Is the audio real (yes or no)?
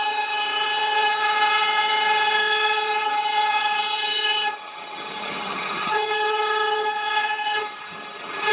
no